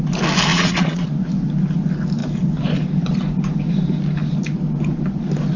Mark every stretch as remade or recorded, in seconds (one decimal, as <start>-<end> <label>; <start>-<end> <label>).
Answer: 0.0-0.5 recorded; 0.5-1.1 remade; 1.1-5.6 recorded